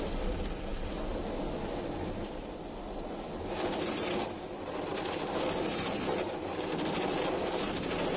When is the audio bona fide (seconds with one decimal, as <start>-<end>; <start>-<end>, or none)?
0.0-8.2